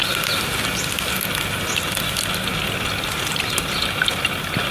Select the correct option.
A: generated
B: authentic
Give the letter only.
B